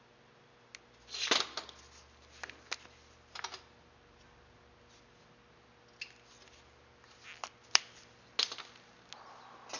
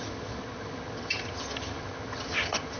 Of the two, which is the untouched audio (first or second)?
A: first